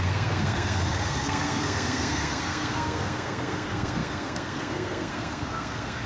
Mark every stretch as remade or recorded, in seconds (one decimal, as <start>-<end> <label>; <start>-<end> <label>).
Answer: 0.0-6.1 remade